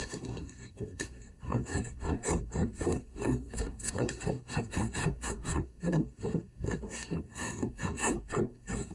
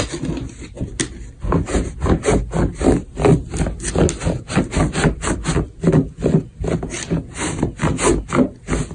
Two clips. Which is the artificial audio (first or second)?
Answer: first